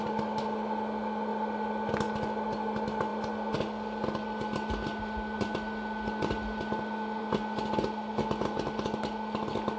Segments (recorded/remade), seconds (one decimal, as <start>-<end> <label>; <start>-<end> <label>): 0.0-9.8 recorded